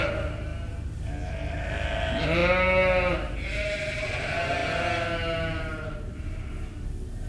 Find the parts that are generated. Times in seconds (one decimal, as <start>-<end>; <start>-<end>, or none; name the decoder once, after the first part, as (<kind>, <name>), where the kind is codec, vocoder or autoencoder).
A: none